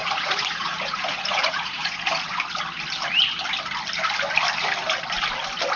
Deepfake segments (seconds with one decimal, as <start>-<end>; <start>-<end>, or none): 0.0-2.4